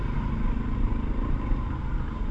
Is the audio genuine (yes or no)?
yes